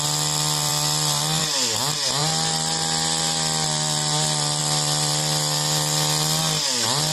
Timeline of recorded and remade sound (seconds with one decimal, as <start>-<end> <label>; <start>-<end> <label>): 0.0-7.1 recorded